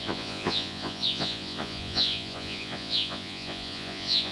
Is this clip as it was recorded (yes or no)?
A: no